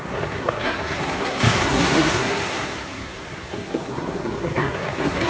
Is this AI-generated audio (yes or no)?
yes